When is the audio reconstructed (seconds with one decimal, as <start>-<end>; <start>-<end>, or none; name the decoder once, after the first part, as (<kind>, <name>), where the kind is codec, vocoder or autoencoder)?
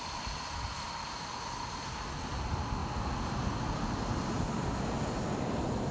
none